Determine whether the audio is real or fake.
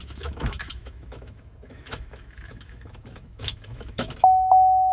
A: fake